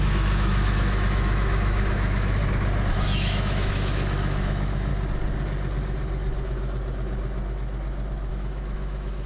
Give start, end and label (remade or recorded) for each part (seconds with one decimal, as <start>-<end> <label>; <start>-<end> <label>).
0.0-2.4 remade; 2.4-2.9 recorded; 2.9-4.9 remade; 4.9-8.3 recorded; 8.3-9.3 remade